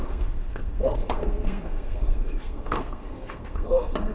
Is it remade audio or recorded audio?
remade